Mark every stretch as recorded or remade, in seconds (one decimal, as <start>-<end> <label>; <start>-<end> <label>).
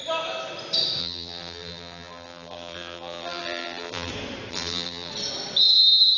0.0-1.0 recorded; 1.0-4.1 remade; 4.1-4.5 recorded; 4.5-5.1 remade; 5.1-6.2 recorded